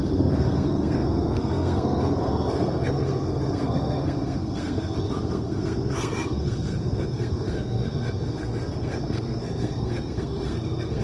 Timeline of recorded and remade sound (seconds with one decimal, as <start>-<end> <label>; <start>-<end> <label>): 0.0-11.0 remade